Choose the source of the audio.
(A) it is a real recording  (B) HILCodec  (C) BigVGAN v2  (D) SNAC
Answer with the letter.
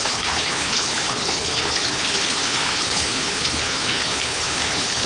B